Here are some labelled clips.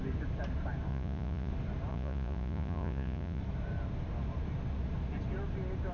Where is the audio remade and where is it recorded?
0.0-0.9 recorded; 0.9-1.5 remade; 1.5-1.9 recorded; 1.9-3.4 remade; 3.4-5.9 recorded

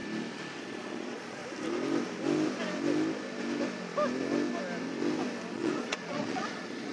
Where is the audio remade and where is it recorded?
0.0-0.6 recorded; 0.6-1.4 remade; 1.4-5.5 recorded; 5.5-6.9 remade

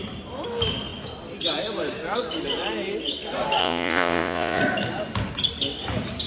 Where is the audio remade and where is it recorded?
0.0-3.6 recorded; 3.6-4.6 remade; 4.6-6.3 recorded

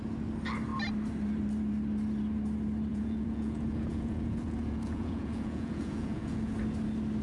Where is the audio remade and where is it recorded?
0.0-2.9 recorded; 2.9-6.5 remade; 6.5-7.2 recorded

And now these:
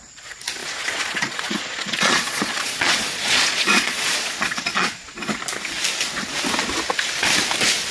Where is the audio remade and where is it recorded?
0.0-0.6 recorded; 0.6-5.3 remade; 5.3-7.9 recorded

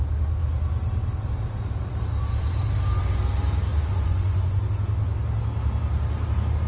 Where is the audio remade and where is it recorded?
0.0-3.7 recorded; 3.7-4.6 remade; 4.6-6.7 recorded